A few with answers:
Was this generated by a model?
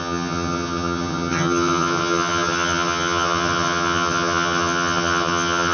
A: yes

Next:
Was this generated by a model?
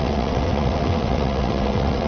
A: yes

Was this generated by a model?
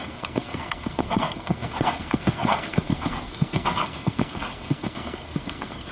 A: yes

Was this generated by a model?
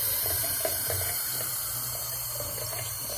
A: yes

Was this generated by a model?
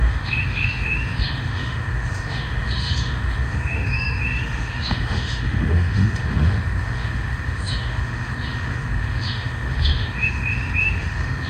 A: yes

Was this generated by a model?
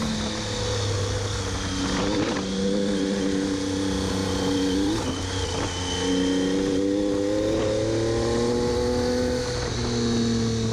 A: no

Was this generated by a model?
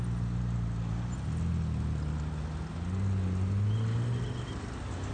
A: no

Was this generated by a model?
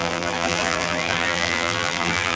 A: yes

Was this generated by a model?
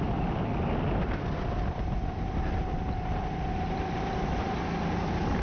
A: no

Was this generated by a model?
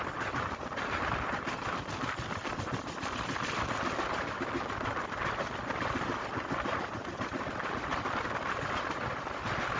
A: no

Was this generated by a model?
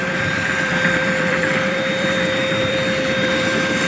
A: yes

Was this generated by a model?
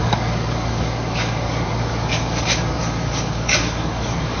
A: yes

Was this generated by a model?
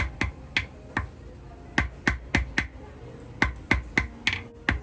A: no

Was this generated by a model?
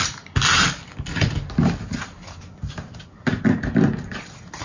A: no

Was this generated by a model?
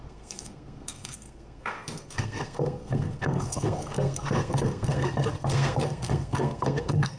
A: yes